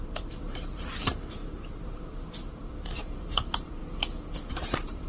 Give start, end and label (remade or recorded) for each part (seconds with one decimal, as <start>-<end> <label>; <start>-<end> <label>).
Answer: 0.0-3.8 remade; 3.8-4.5 recorded; 4.5-5.1 remade